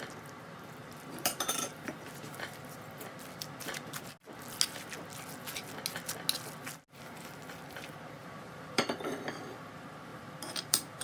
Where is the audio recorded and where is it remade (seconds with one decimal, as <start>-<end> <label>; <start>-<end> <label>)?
0.0-0.8 recorded; 0.8-1.7 remade; 1.7-8.2 recorded; 8.2-8.8 remade; 8.8-10.1 recorded; 10.1-11.0 remade